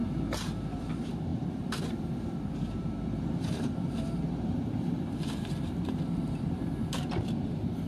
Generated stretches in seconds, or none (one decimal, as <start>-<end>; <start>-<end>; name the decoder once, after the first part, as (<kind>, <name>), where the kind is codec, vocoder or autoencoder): 0.0-7.9 (vocoder, BigVGAN v2)